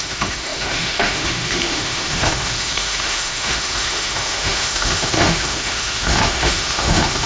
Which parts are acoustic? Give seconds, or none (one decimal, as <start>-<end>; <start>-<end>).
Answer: none